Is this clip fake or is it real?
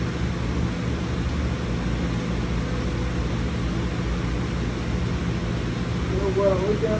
real